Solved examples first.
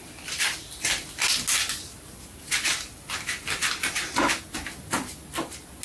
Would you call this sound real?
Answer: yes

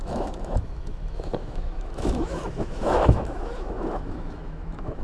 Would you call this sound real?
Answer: no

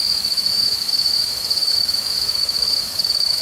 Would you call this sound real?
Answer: no